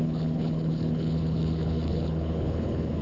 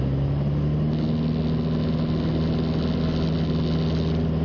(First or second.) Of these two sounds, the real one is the second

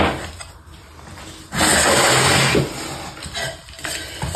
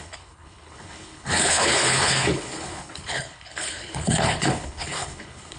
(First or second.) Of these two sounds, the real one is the first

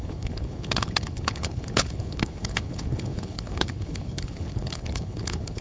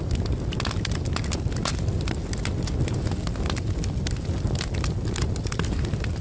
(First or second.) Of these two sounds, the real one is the second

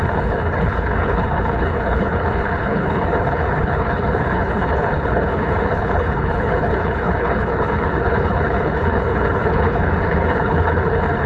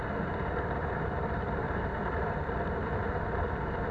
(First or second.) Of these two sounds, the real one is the second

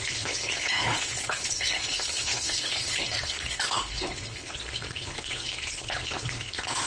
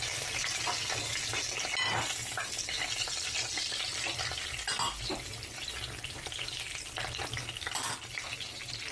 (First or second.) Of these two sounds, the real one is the second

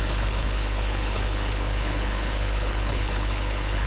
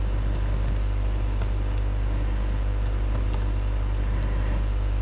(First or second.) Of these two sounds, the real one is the second